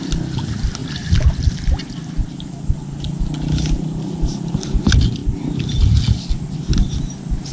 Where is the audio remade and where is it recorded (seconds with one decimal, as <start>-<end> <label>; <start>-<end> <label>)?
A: 0.0-7.5 recorded